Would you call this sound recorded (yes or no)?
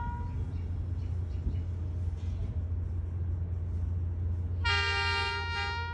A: yes